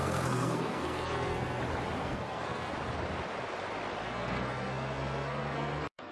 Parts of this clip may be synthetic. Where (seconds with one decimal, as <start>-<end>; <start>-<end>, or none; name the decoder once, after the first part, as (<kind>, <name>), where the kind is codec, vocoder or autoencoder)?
0.0-1.6 (codec, SNAC); 2.0-2.7; 4.0-6.1